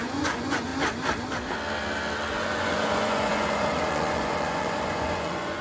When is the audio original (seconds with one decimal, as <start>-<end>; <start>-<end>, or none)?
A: 0.7-2.3